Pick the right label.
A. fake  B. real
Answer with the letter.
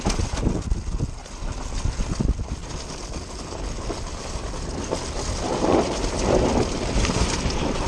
B